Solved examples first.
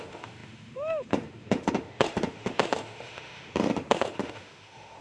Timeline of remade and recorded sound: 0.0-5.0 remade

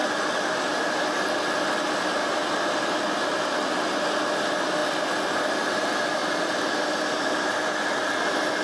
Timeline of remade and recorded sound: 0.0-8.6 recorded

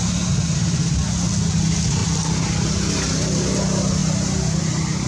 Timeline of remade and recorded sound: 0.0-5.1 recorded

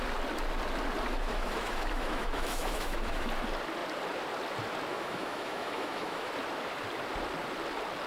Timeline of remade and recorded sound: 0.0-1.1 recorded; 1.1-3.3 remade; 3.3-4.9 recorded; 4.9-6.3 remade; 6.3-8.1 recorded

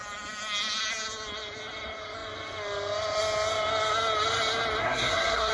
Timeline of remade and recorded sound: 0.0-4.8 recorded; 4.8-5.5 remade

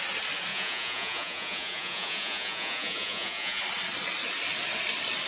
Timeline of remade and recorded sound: 0.0-0.5 recorded; 0.5-3.6 remade; 3.6-5.3 recorded